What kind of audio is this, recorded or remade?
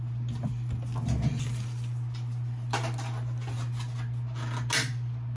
recorded